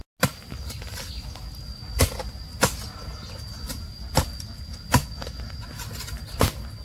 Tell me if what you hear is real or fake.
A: real